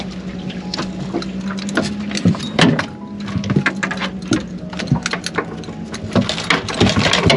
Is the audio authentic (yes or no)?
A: yes